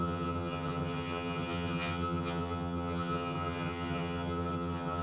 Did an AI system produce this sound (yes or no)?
yes